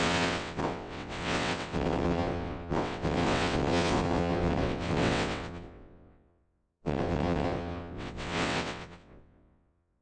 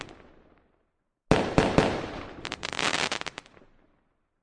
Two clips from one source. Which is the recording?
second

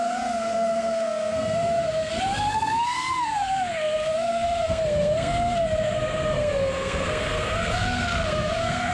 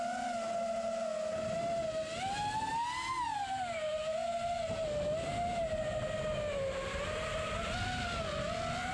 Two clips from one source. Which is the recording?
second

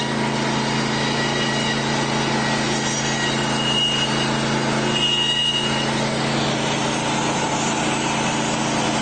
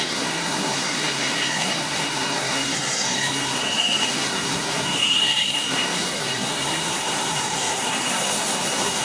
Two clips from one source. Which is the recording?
first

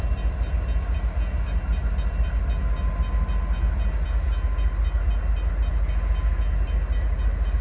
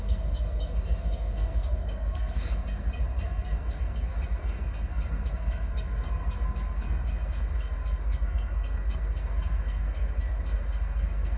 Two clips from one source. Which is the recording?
first